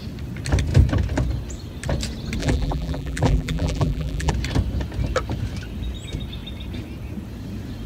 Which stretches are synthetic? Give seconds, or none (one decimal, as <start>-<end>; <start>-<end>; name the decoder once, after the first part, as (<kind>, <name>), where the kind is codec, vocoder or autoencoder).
2.4-4.3 (vocoder, BigVGAN v2)